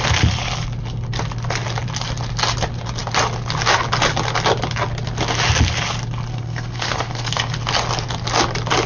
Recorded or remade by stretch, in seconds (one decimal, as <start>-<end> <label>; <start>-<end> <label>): 0.0-6.3 recorded; 6.3-7.3 remade; 7.3-8.9 recorded